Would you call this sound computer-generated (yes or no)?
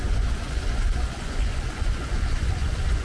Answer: yes